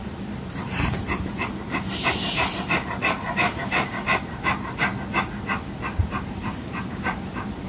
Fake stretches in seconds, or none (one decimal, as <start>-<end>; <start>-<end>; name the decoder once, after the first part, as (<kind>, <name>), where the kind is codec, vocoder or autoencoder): 0.0-4.9 (vocoder, BigVGAN v2); 6.0-7.7